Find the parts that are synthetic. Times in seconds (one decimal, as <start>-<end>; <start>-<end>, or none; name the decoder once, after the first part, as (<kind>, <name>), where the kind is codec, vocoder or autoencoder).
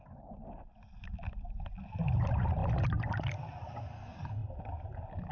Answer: none